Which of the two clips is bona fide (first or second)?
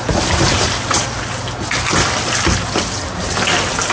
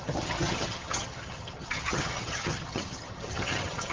first